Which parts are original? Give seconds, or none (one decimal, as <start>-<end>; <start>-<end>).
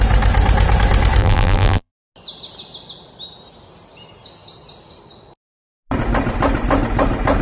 0.0-1.2; 1.9-7.4